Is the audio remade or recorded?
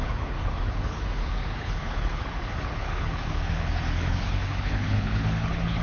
remade